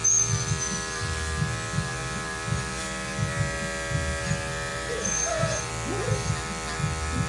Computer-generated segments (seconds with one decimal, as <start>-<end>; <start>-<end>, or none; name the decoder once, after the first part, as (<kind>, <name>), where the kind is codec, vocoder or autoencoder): 4.7-5.7 (vocoder, BigVGAN v2)